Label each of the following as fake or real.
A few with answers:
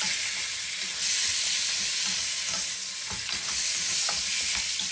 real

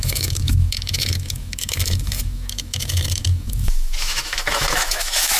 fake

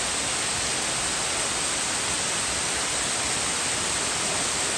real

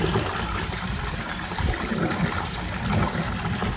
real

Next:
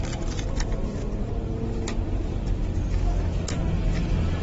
real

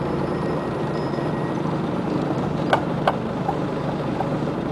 real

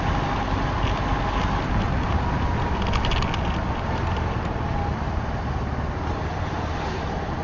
real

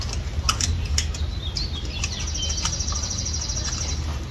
real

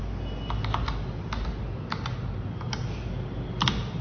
real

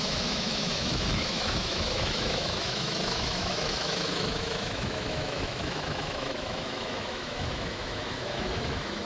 fake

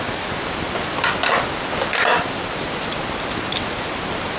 real